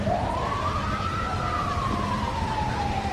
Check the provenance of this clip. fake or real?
real